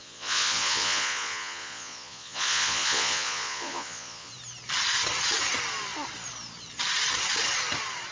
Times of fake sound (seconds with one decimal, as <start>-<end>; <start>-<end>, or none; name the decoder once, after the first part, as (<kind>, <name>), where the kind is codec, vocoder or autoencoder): 0.0-4.3 (vocoder, Vocos)